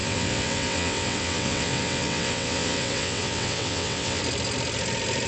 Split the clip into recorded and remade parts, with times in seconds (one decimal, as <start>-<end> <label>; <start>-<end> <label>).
0.0-4.2 remade; 4.2-5.3 recorded